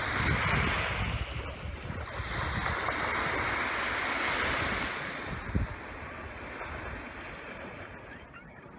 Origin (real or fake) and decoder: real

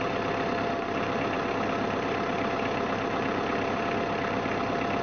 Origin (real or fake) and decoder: fake, vocoder, BigVGAN v2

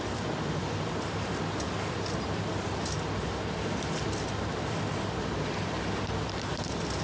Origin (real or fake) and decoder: fake, vocoder, BigVGAN v2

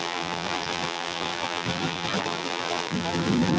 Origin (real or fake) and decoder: fake, vocoder, BigVGAN v2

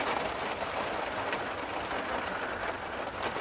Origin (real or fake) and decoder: fake, vocoder, BigVGAN v2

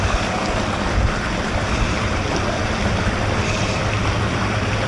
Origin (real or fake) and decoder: fake, vocoder, BigVGAN v2